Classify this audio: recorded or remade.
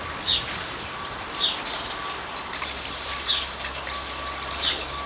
recorded